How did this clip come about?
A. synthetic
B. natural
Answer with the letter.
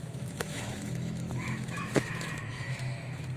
A